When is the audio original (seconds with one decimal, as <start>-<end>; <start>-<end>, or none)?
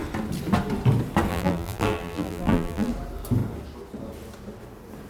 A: 0.0-1.3; 2.9-5.1